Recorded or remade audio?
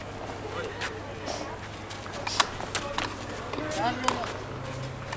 recorded